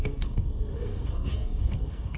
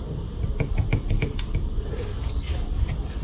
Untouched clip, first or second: second